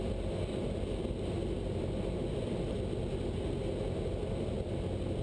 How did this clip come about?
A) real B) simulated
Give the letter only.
A